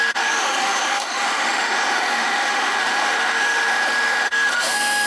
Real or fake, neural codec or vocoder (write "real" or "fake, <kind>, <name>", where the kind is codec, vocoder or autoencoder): fake, autoencoder, DAC-VAE